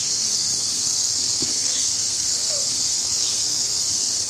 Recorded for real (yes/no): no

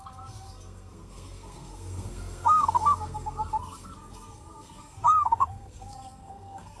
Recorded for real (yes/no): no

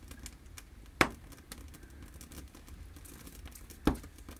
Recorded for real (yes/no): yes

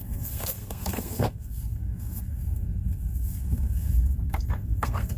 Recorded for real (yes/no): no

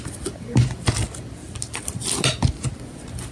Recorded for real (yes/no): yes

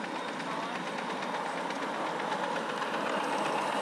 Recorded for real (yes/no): yes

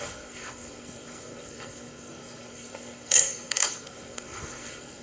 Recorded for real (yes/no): no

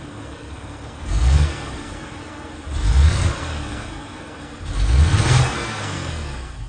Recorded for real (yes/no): no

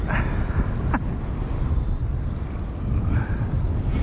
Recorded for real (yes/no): yes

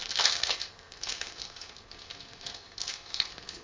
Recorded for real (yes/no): no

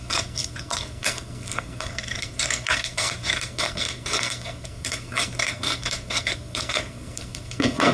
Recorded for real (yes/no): no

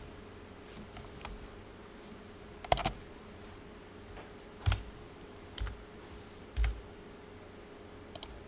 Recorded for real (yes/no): yes